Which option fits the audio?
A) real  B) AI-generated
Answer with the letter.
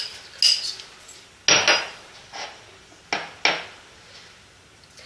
A